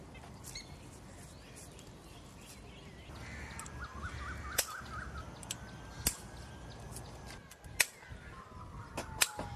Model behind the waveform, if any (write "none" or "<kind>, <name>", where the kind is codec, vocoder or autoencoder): none